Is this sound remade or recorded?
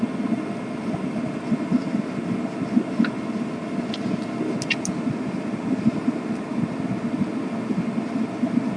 recorded